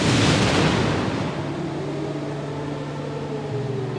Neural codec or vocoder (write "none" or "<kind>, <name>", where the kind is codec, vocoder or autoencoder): none